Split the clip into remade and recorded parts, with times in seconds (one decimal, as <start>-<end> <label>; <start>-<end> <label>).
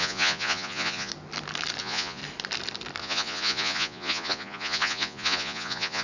0.0-1.1 remade; 1.1-1.8 recorded; 1.8-2.2 remade; 2.2-3.0 recorded; 3.0-6.0 remade